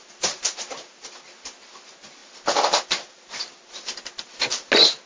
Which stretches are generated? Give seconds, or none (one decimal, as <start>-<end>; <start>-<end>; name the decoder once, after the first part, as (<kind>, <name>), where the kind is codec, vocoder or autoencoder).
none